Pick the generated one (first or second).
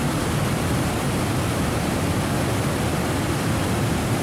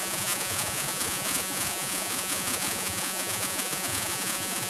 second